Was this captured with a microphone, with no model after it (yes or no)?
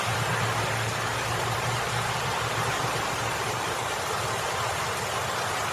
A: no